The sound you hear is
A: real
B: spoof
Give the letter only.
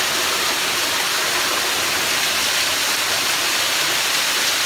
A